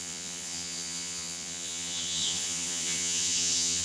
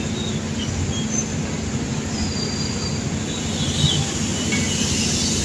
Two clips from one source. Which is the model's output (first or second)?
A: first